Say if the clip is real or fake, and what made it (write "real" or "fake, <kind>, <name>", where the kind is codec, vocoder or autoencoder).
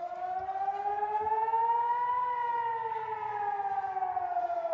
real